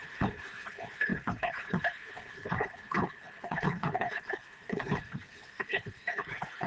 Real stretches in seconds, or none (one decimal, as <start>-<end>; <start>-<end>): none